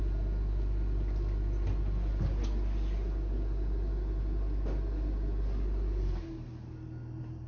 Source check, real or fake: real